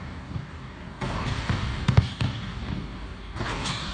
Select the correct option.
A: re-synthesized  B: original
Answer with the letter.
A